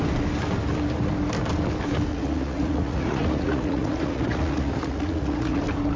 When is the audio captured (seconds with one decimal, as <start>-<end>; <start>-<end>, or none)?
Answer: 0.0-2.1; 5.6-6.0